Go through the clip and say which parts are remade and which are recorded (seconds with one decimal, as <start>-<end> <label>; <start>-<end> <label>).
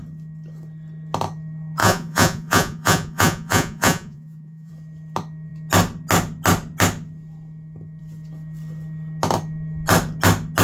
0.0-1.8 recorded; 1.8-4.7 remade; 4.7-10.6 recorded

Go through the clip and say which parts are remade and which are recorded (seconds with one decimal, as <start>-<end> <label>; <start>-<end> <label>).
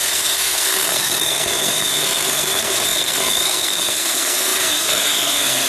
0.0-5.7 remade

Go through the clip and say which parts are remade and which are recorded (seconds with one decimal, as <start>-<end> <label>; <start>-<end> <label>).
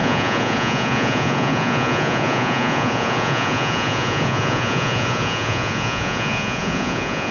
0.0-7.3 remade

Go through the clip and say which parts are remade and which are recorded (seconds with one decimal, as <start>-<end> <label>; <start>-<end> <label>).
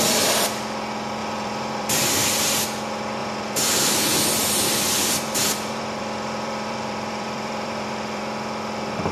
0.0-1.2 recorded; 1.2-2.0 remade; 2.0-3.2 recorded; 3.2-3.9 remade; 3.9-4.4 recorded; 4.4-8.2 remade; 8.2-9.1 recorded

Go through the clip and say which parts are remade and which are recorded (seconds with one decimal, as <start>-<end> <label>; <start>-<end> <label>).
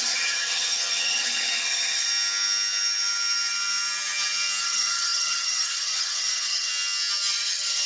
0.0-2.1 remade; 2.1-4.6 recorded; 4.6-6.7 remade; 6.7-7.5 recorded; 7.5-7.9 remade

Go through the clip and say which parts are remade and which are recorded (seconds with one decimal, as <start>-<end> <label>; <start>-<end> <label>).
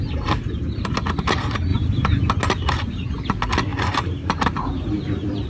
0.0-1.7 recorded; 1.7-2.3 remade; 2.3-3.7 recorded; 3.7-4.6 remade; 4.6-5.5 recorded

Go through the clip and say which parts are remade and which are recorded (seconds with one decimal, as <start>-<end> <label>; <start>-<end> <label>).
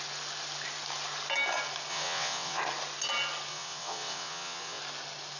0.0-1.9 recorded; 1.9-2.6 remade; 2.6-3.5 recorded; 3.5-4.8 remade; 4.8-5.4 recorded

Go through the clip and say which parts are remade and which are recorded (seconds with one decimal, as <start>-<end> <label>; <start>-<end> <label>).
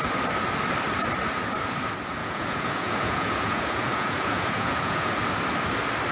0.0-2.2 recorded; 2.2-5.1 remade; 5.1-6.1 recorded